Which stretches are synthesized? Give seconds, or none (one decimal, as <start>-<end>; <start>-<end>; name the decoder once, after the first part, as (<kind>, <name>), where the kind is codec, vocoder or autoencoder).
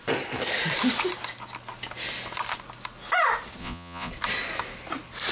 3.6-4.1 (vocoder, Vocos)